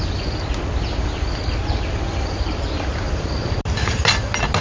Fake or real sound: real